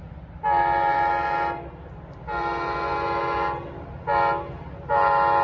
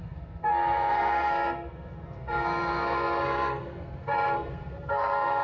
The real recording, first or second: first